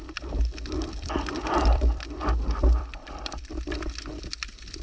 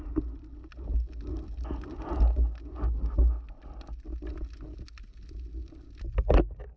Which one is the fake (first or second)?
first